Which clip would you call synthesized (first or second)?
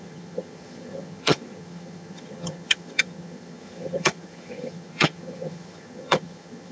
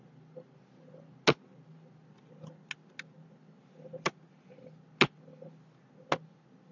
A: first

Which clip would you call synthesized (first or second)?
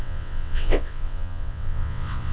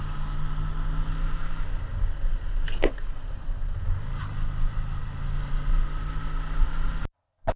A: first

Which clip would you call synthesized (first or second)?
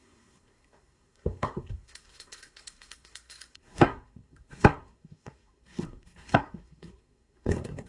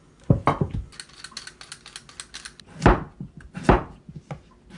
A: first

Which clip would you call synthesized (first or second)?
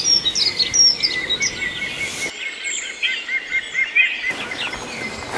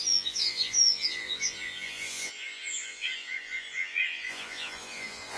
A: second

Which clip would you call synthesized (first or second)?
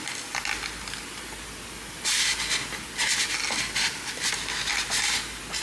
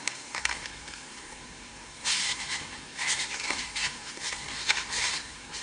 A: second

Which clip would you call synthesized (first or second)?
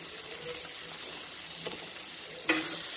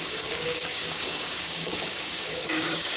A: second